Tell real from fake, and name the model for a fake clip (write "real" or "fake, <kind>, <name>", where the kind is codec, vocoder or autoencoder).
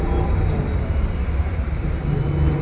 real